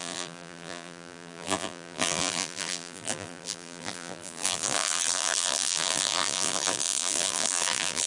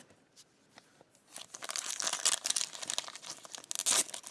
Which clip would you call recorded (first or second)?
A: second